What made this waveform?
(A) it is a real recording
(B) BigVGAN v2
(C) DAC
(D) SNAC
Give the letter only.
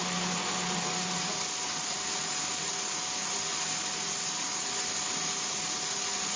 A